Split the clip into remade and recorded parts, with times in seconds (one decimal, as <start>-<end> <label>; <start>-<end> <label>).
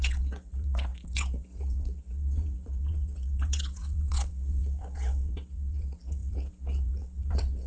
0.0-7.7 remade